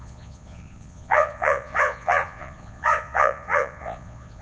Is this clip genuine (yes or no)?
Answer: no